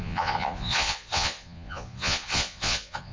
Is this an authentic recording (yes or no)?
no